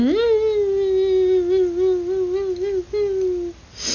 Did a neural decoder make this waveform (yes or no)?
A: no